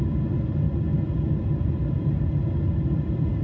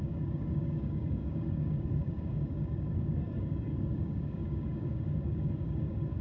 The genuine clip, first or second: first